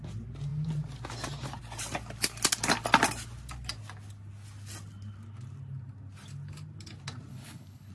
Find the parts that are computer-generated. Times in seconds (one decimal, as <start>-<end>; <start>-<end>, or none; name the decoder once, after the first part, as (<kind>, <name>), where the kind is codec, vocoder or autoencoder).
7.3-7.9 (codec, HILCodec)